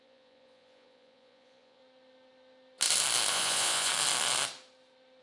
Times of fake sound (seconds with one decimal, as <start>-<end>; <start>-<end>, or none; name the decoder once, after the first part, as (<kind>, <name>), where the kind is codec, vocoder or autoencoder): 0.0-1.8 (vocoder, Vocos); 3.3-3.9